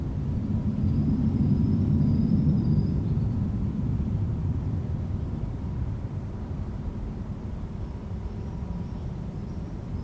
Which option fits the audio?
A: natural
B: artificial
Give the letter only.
B